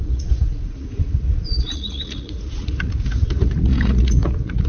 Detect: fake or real fake